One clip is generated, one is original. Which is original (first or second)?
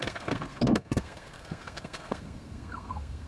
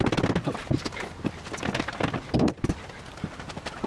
second